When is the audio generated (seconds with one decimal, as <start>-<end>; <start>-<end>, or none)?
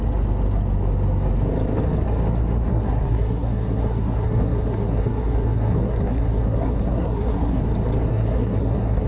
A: 2.7-7.6; 8.1-9.1